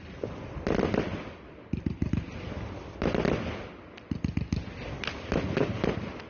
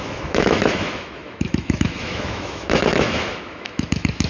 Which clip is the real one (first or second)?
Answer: first